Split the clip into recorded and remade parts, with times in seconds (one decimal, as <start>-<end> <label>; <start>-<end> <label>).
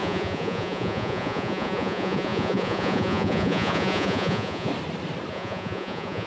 0.0-4.7 remade; 4.7-5.3 recorded; 5.3-6.3 remade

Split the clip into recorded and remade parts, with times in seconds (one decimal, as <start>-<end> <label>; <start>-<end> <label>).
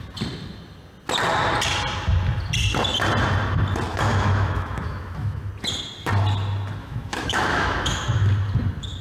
0.0-3.9 recorded; 3.9-5.5 remade; 5.5-6.8 recorded; 6.8-8.3 remade; 8.3-9.0 recorded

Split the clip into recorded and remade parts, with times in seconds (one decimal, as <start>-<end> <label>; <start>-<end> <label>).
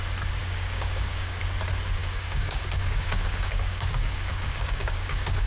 0.0-0.4 recorded; 0.4-1.4 remade; 1.4-2.0 recorded; 2.0-5.5 remade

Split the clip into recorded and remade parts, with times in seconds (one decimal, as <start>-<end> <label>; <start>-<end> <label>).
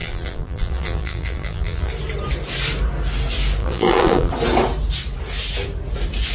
0.0-1.9 remade; 1.9-3.6 recorded; 3.6-4.3 remade; 4.3-6.3 recorded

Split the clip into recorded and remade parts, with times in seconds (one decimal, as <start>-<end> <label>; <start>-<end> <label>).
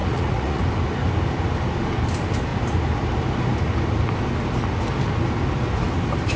0.0-0.6 remade; 0.6-6.4 recorded